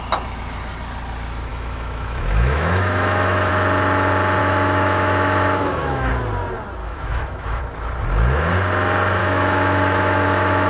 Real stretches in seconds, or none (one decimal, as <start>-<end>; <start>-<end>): 0.0-1.5; 3.5-4.4; 6.1-6.8; 7.6-9.2